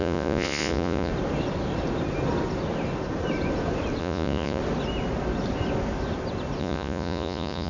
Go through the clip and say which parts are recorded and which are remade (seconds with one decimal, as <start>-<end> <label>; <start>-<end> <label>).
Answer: 0.0-1.1 remade; 1.1-4.0 recorded; 4.0-4.6 remade; 4.6-6.6 recorded; 6.6-7.7 remade

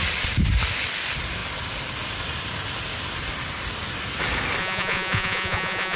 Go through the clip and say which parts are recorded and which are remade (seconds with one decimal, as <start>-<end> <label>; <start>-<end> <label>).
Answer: 0.0-4.6 recorded; 4.6-6.0 remade